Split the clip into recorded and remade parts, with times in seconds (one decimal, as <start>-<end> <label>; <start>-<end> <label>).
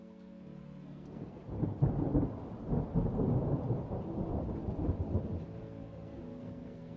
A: 0.0-1.4 remade; 1.4-5.6 recorded; 5.6-7.0 remade